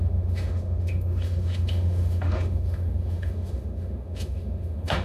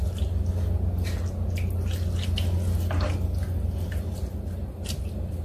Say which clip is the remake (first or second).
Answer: first